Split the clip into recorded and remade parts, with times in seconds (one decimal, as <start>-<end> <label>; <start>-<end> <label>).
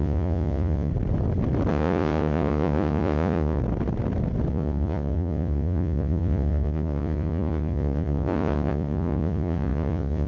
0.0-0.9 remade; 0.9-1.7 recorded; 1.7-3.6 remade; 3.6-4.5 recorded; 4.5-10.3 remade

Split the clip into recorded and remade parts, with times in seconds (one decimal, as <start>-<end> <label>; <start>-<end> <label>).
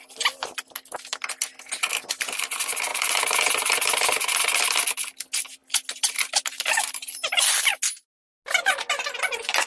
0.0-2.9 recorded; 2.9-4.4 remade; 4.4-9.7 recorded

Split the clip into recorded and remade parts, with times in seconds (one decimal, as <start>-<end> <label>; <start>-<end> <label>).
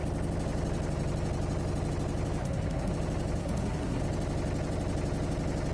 0.0-2.4 recorded; 2.4-2.9 remade; 2.9-3.4 recorded; 3.4-4.0 remade; 4.0-5.7 recorded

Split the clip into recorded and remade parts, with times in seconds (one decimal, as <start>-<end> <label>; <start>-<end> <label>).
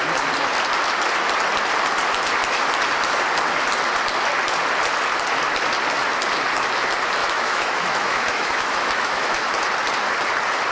0.0-7.2 recorded; 7.2-9.5 remade; 9.5-10.7 recorded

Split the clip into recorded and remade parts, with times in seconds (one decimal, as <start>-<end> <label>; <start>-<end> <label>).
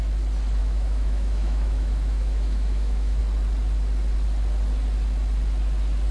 0.0-0.6 recorded; 0.6-3.2 remade; 3.2-6.1 recorded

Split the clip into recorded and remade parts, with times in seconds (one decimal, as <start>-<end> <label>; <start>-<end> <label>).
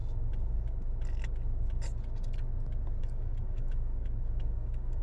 0.0-3.0 recorded; 3.0-5.0 remade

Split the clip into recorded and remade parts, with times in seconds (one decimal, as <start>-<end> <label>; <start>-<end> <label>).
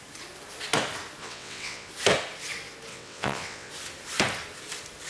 0.0-1.2 recorded; 1.2-1.9 remade; 1.9-2.9 recorded; 2.9-3.7 remade; 3.7-5.1 recorded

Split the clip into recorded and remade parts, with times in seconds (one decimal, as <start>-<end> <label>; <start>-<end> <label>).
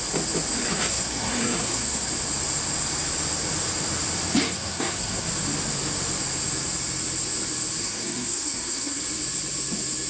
0.0-0.7 recorded; 0.7-2.1 remade; 2.1-4.4 recorded; 4.4-5.3 remade; 5.3-7.8 recorded; 7.8-9.0 remade; 9.0-10.1 recorded